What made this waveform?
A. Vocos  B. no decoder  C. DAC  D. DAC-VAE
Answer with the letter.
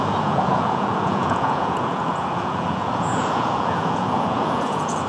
A